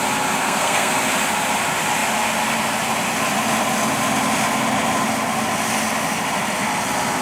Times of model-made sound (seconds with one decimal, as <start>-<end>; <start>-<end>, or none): 0.4-0.9